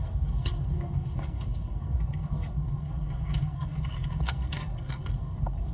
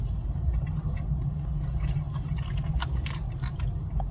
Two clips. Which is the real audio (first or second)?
second